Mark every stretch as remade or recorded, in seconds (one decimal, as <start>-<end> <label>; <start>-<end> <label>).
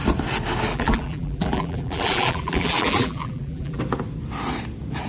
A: 0.0-0.7 recorded; 0.7-3.8 remade; 3.8-5.1 recorded